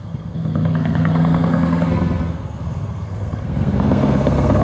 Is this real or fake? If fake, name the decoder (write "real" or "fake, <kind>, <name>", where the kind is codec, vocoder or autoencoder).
fake, codec, SNAC